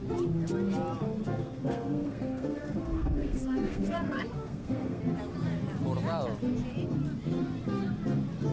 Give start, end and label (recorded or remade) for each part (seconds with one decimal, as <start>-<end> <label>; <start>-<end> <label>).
0.0-1.2 recorded; 1.2-5.0 remade; 5.0-8.5 recorded